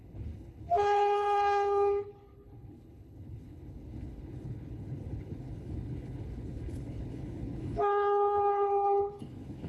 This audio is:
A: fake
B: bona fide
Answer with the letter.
A